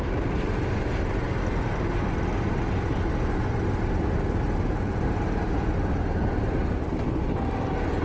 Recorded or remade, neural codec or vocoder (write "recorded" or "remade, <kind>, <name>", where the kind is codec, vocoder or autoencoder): recorded